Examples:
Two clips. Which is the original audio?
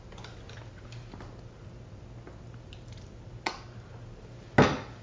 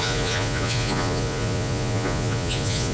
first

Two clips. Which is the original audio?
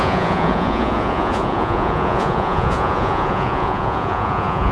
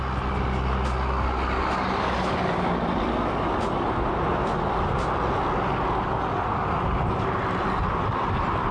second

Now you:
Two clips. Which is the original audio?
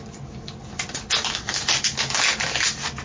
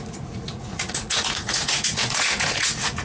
first